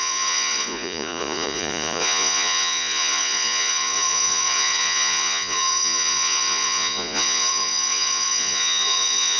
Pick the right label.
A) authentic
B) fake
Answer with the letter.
B